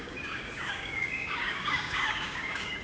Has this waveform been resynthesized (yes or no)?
yes